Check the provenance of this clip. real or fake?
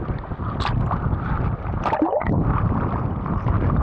real